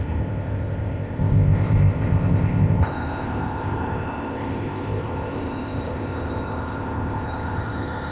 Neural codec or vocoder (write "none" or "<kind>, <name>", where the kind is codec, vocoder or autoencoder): codec, ZipCodec